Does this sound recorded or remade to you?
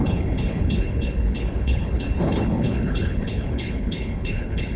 remade